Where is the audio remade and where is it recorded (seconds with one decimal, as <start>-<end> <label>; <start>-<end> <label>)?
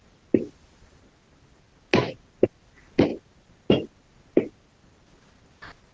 0.0-5.9 recorded